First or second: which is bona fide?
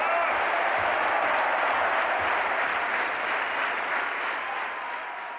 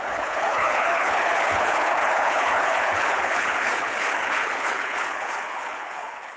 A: first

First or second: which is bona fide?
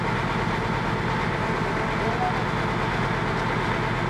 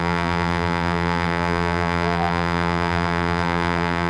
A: first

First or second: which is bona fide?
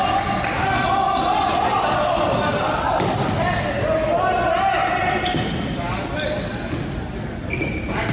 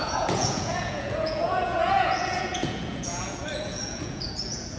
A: first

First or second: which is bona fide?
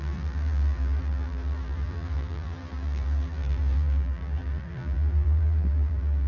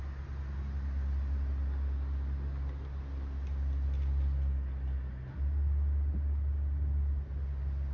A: second